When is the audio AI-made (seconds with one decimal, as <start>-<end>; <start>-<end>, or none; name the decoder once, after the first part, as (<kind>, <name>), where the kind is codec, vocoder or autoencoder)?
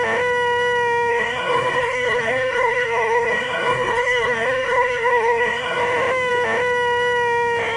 1.1-5.8 (codec, SNAC)